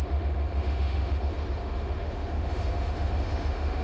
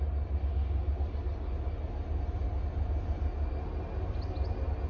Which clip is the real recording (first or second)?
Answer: second